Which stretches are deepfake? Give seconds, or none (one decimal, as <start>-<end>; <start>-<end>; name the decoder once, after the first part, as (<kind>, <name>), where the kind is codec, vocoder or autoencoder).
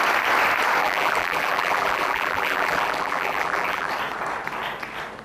0.8-3.9 (vocoder, BigVGAN v2)